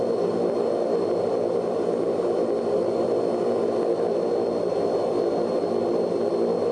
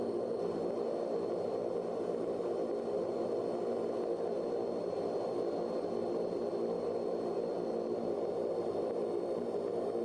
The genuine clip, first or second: first